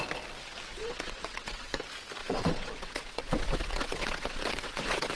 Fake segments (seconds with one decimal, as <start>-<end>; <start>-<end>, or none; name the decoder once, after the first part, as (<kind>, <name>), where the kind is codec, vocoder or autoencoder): 0.7-1.8 (vocoder, WaveNeXt); 2.2-5.2